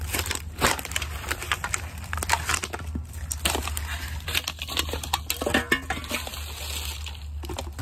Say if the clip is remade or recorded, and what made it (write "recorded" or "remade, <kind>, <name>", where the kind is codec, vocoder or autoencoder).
recorded